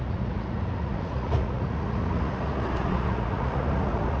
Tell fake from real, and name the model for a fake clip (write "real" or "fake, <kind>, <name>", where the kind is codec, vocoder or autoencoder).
fake, vocoder, Vocos